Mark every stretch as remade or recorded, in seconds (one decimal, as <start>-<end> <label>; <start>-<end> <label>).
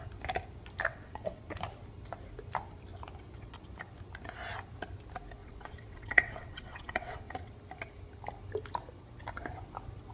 0.0-0.9 recorded; 0.9-1.4 remade; 1.4-5.4 recorded; 5.4-7.5 remade; 7.5-10.1 recorded